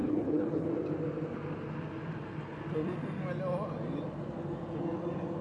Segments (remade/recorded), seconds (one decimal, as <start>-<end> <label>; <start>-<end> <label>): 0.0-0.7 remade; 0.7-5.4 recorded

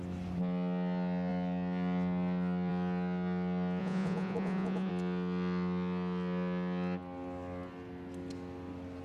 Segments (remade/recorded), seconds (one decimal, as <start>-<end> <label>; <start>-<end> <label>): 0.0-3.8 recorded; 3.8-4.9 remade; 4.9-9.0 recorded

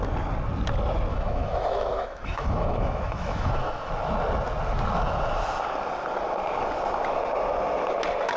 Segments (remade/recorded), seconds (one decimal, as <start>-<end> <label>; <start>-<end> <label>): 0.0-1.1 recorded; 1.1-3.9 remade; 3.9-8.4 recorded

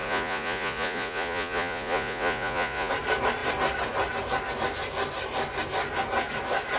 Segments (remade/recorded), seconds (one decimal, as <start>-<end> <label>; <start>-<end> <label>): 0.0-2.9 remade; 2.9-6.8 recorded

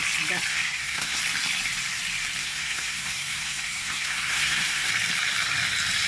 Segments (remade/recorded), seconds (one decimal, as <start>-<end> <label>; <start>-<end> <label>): 0.0-0.5 recorded; 0.5-1.2 remade; 1.2-2.4 recorded; 2.4-4.9 remade; 4.9-6.1 recorded

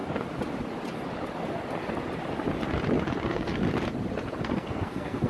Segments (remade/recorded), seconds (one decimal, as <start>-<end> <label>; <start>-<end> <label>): 0.0-3.2 recorded; 3.2-3.6 remade; 3.6-4.4 recorded; 4.4-5.3 remade